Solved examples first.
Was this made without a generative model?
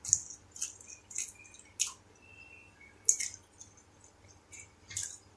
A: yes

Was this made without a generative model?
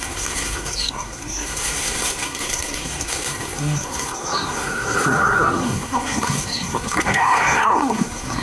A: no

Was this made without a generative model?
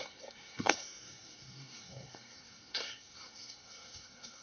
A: no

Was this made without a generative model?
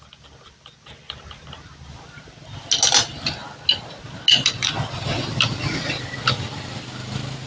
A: yes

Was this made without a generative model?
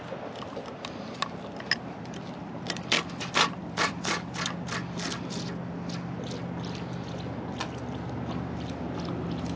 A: yes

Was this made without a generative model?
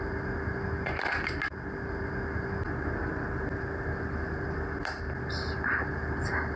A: yes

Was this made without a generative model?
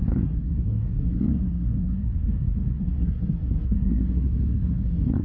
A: no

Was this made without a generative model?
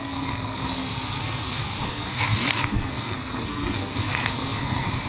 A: no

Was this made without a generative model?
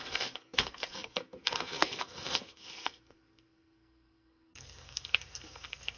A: no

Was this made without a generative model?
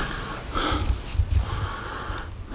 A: yes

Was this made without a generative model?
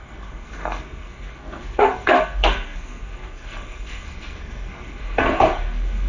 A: no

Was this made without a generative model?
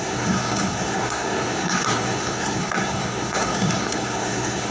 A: no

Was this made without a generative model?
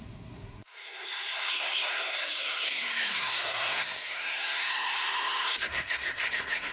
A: no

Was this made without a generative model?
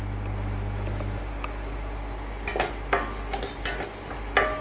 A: yes